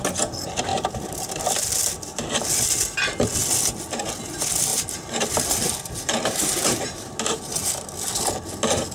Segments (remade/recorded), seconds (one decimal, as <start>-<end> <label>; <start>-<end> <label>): 0.0-0.7 recorded; 0.7-1.2 remade; 1.2-4.7 recorded; 4.7-7.7 remade; 7.7-8.9 recorded